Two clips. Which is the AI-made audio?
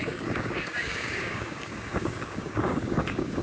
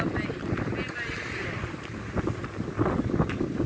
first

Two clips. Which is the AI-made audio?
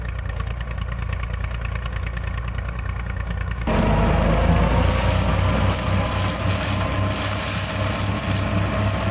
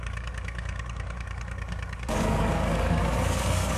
second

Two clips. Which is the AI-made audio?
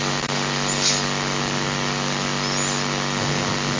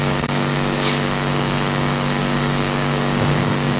second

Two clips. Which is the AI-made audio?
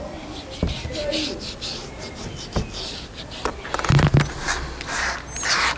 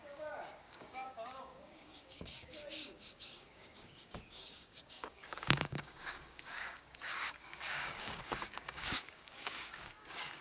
second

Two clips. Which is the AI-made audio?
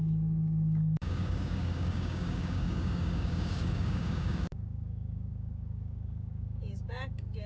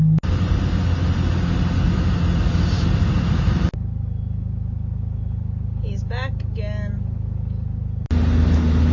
first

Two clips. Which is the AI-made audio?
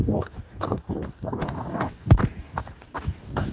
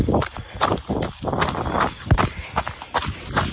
first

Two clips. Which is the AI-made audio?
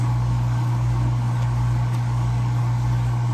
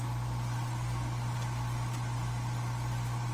first